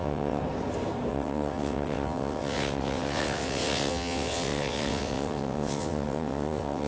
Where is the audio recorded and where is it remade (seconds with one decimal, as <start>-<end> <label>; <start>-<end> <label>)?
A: 0.0-0.4 remade; 0.4-1.1 recorded; 1.1-6.9 remade